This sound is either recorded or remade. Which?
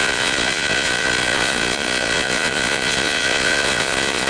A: remade